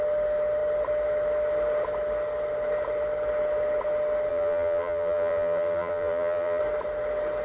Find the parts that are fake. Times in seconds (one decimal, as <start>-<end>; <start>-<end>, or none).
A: 4.3-6.6